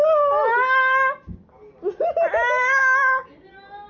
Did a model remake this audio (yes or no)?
no